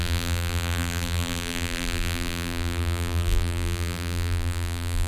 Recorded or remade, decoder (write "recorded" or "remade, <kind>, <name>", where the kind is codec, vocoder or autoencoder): remade, vocoder, BigVGAN v2